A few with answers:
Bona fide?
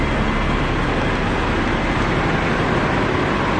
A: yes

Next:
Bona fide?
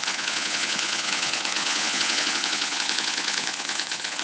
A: no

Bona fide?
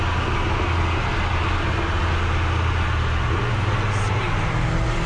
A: yes